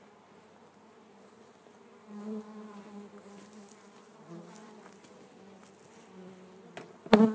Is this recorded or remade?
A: recorded